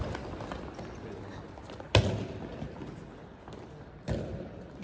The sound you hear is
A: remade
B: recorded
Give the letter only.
B